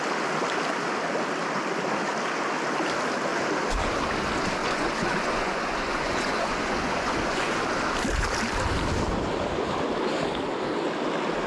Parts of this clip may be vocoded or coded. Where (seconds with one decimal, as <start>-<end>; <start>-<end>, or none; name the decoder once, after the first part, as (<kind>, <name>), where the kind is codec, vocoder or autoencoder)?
4.6-7.6 (vocoder, Vocos)